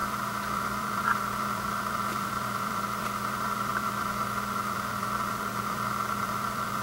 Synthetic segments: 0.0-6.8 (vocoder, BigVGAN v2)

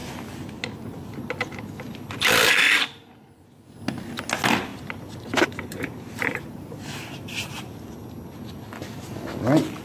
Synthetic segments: 4.7-7.7 (vocoder, BigVGAN v2)